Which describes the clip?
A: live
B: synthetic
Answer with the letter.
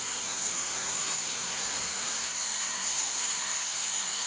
B